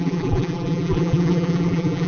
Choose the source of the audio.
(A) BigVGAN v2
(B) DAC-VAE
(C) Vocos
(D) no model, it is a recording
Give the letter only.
A